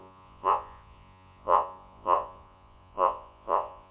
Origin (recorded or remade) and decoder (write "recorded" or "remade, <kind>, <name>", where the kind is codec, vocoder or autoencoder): remade, vocoder, Vocos